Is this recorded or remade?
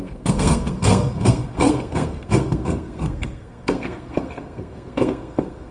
remade